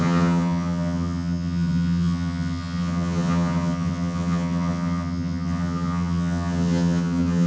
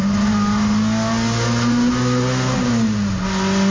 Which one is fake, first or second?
first